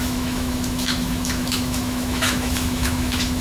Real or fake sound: fake